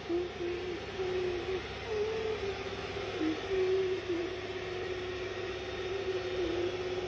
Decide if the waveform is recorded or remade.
recorded